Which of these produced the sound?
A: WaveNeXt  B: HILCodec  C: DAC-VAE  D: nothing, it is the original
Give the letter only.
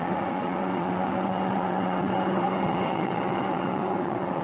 A